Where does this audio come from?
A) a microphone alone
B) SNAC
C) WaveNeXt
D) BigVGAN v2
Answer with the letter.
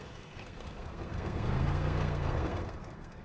B